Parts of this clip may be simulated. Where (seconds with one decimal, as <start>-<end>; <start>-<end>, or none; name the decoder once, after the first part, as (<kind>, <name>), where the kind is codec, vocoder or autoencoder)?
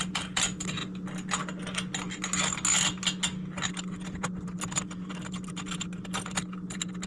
none